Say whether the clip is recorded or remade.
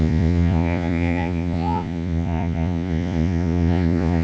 remade